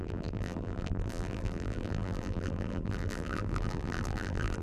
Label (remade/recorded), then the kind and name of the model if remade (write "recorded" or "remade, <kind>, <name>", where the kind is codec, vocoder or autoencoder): remade, vocoder, BigVGAN v2